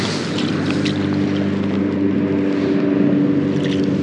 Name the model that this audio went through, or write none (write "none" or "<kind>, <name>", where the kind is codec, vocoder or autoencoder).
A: none